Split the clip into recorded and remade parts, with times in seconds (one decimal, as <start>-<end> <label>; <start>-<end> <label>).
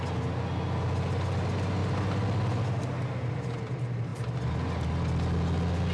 0.0-5.9 recorded